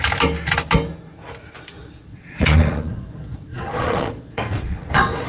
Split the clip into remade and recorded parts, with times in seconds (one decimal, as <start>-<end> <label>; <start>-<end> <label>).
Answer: 0.0-2.1 recorded; 2.1-5.3 remade